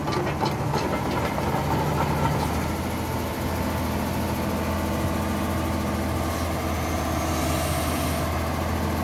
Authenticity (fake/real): real